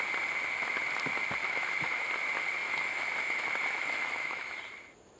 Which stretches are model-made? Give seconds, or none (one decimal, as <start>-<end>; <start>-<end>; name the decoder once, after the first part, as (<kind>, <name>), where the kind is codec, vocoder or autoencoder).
1.4-2.1 (autoencoder, DAC-VAE); 2.6-4.6